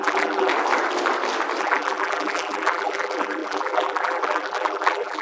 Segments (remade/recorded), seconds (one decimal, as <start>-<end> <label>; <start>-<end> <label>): 0.0-0.5 remade; 0.5-1.6 recorded; 1.6-5.2 remade